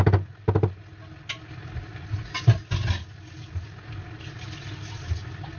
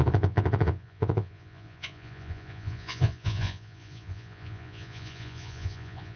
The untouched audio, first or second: first